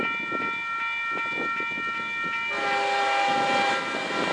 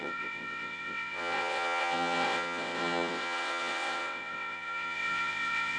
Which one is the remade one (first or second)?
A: second